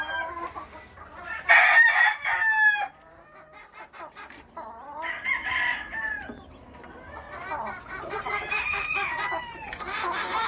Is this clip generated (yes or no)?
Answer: no